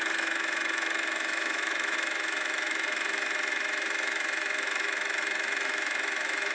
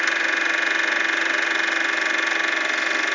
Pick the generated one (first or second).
first